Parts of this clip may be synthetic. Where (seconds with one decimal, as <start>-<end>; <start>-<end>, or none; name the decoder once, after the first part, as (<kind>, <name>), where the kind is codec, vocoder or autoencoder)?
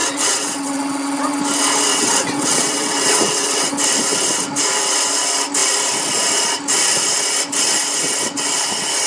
0.0-1.4 (vocoder, WaveNeXt); 1.9-3.8